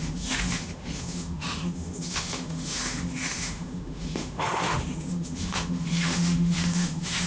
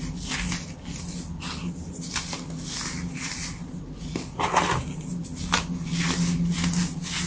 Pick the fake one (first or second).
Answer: first